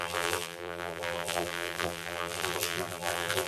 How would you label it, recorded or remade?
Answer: remade